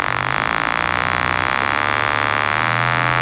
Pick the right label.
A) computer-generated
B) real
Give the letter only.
B